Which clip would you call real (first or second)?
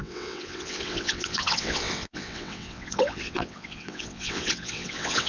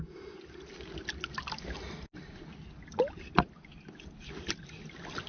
second